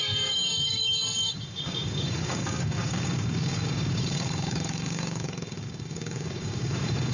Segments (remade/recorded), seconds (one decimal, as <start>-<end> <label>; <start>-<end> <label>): 0.0-7.1 remade